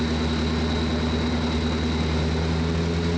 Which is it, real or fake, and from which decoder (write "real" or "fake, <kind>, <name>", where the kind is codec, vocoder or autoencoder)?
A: real